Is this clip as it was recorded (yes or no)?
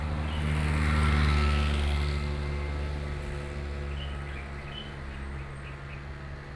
yes